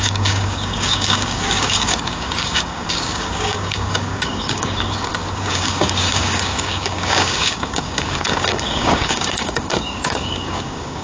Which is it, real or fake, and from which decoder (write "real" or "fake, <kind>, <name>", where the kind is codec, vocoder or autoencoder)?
fake, codec, DAC